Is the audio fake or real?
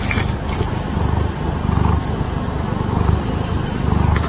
fake